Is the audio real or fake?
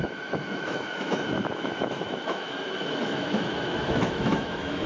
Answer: fake